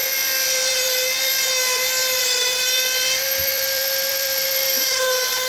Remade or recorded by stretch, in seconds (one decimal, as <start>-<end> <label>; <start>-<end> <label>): 0.0-1.4 remade; 1.4-2.0 recorded; 2.0-4.8 remade; 4.8-5.5 recorded

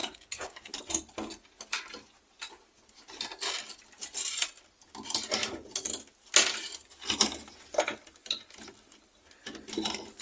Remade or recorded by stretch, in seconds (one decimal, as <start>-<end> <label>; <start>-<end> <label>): 0.0-0.7 remade; 0.7-10.2 recorded

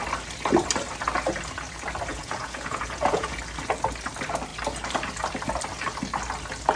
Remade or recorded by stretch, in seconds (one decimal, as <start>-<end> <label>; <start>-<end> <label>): 0.0-2.1 recorded; 2.1-3.4 remade; 3.4-6.8 recorded

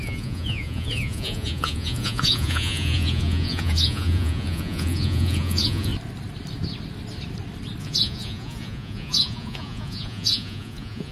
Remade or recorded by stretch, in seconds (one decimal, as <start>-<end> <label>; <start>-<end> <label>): 0.0-5.9 remade; 5.9-7.8 recorded; 7.8-11.1 remade

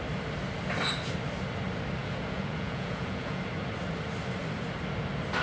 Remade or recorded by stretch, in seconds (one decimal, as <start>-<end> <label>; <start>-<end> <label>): 0.0-2.0 recorded; 2.0-3.4 remade; 3.4-5.4 recorded

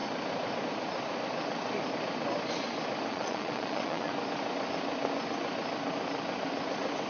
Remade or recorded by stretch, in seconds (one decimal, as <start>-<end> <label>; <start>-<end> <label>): 0.0-3.1 recorded; 3.1-4.1 remade; 4.1-7.1 recorded